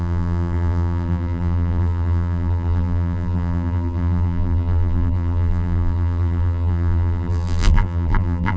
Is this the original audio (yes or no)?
no